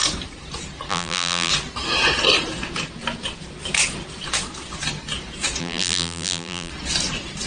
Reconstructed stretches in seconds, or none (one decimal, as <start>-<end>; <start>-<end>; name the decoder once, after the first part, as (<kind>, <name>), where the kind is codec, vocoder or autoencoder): 0.9-1.5 (vocoder, BigVGAN v2); 5.6-6.7